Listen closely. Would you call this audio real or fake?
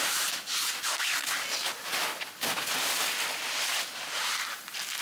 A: real